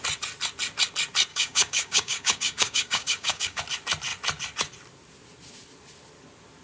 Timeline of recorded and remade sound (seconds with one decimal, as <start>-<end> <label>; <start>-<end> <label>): 0.0-1.3 recorded; 1.3-3.6 remade; 3.6-6.6 recorded